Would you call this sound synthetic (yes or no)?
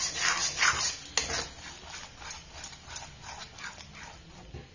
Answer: no